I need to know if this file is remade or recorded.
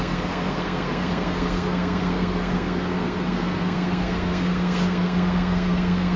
remade